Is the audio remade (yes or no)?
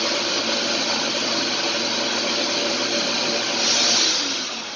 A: no